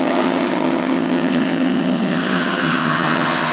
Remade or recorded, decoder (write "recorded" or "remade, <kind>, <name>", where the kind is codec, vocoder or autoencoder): remade, vocoder, HiFi-GAN